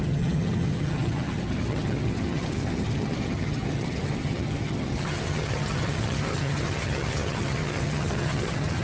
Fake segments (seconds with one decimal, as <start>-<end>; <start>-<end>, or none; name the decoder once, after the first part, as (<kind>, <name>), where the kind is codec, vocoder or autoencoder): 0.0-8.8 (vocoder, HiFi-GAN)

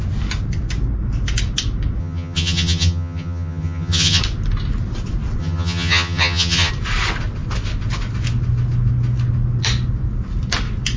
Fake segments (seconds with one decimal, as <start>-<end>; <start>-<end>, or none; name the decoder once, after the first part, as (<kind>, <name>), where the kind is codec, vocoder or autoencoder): 2.0-4.2 (vocoder, HiFi-GAN); 5.4-6.7

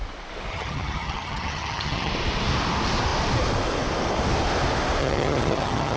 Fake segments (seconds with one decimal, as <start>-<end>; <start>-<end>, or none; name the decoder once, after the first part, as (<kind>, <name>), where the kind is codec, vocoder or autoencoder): 0.5-2.1 (vocoder, HiFi-GAN); 5.0-6.0

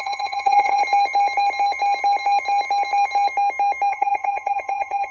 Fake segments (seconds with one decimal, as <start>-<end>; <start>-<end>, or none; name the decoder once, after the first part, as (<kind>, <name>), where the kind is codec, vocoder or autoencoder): 0.0-0.8 (vocoder, HiFi-GAN); 3.9-5.1